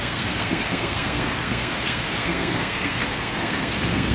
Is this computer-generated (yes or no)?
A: yes